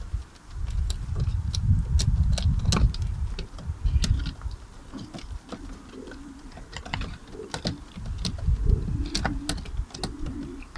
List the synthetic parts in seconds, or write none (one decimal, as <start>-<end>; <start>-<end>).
none